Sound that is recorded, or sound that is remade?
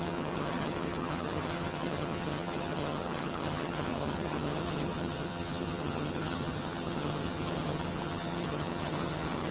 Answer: remade